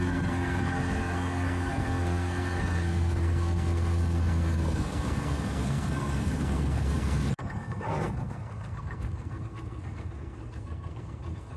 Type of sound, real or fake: fake